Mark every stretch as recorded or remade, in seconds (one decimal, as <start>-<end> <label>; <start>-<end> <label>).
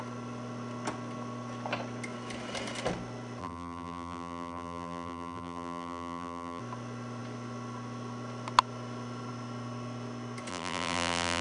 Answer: 0.0-3.4 recorded; 3.4-6.6 remade; 6.6-10.5 recorded; 10.5-11.4 remade